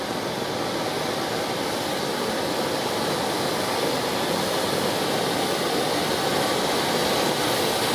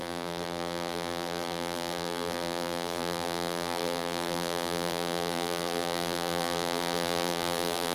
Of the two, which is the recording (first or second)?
first